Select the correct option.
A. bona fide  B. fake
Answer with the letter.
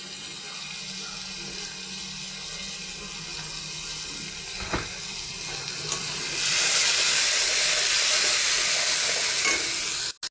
A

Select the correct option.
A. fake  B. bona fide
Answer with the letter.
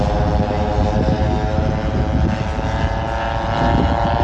B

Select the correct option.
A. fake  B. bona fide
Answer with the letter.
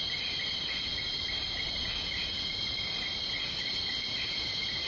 B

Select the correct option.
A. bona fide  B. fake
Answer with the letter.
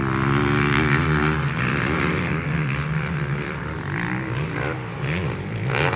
A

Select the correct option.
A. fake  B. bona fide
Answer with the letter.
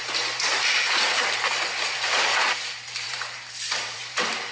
A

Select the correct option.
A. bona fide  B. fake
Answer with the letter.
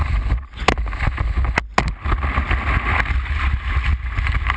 A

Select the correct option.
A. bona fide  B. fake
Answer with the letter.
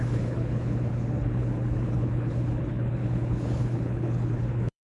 B